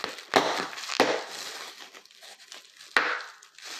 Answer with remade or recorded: recorded